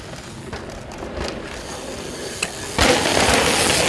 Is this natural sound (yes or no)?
yes